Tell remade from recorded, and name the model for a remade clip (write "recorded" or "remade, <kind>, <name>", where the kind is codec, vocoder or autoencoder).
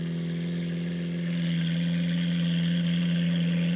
recorded